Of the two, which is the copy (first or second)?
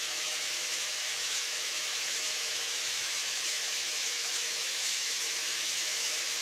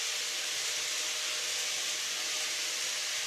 first